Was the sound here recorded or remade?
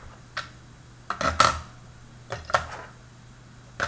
recorded